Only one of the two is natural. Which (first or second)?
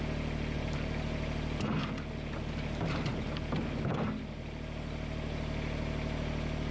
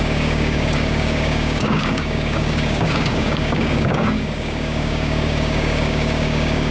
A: first